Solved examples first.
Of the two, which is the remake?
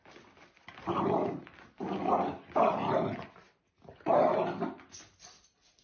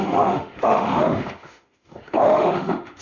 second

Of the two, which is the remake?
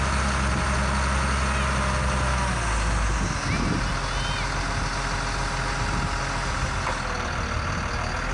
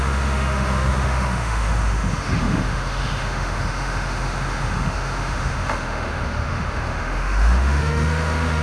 second